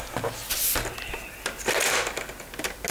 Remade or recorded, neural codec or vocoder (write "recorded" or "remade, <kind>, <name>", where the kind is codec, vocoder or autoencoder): recorded